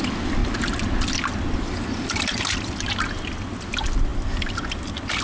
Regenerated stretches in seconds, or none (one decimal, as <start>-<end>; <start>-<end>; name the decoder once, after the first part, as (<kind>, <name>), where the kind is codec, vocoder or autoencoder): none